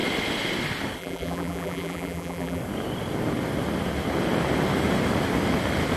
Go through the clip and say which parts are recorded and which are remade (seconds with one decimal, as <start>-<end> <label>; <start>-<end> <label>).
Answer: 0.0-1.0 recorded; 1.0-2.6 remade; 2.6-6.0 recorded